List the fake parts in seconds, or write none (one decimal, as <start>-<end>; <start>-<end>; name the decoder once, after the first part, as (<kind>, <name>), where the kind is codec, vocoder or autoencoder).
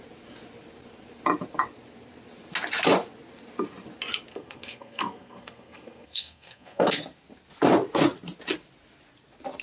4.3-7.0 (codec, SNAC)